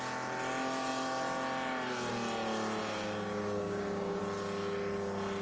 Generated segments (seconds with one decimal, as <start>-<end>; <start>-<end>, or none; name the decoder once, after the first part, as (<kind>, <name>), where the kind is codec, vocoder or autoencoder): 2.8-4.2 (codec, DAC)